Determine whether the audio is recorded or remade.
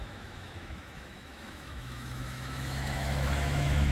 remade